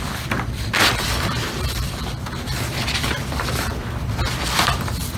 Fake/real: fake